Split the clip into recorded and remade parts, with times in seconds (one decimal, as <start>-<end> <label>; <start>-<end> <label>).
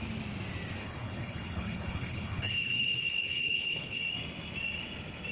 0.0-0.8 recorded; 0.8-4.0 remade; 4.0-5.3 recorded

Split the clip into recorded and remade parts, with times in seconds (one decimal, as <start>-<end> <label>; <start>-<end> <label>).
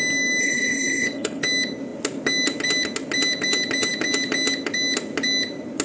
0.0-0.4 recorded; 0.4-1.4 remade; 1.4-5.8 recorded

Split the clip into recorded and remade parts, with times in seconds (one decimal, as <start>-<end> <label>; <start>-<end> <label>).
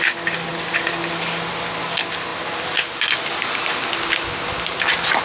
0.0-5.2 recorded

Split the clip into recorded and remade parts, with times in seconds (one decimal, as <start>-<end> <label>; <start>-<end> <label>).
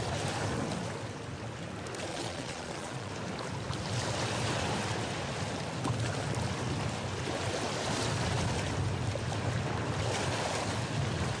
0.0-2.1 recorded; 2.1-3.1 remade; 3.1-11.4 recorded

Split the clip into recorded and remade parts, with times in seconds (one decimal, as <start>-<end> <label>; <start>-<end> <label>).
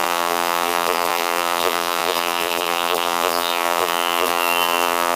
0.0-5.2 remade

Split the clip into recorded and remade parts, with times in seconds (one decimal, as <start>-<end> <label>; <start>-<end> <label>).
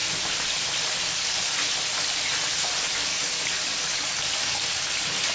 0.0-3.1 recorded; 3.1-4.3 remade; 4.3-5.3 recorded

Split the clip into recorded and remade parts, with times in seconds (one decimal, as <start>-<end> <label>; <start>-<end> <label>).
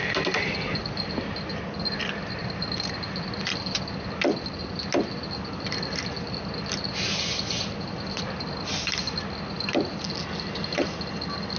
0.0-11.6 recorded